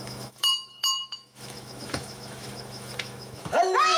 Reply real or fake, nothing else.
fake